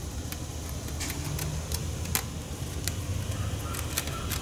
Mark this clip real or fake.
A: real